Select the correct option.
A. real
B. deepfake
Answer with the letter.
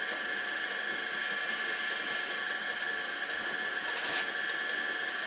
A